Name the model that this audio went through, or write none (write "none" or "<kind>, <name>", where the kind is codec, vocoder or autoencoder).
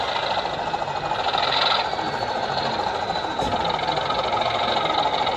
none